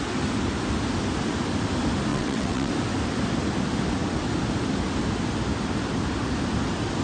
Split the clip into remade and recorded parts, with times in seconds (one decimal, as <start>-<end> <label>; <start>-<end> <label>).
0.0-2.1 recorded; 2.1-2.7 remade; 2.7-7.0 recorded